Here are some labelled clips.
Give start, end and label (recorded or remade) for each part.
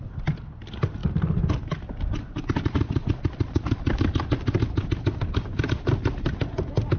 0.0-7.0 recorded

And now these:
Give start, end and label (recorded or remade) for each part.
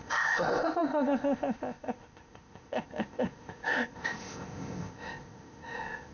0.0-6.1 remade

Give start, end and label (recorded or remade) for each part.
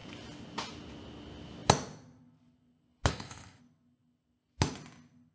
0.0-3.1 recorded; 3.1-3.6 remade; 3.6-5.3 recorded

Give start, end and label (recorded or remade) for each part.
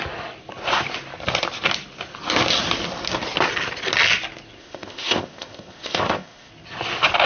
0.0-4.6 recorded; 4.6-6.5 remade; 6.5-7.3 recorded